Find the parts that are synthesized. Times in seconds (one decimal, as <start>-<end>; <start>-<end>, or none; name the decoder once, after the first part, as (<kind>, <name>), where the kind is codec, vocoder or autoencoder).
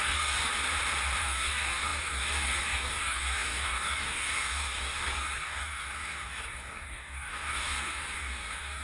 0.0-0.5 (codec, DAC); 1.2-8.8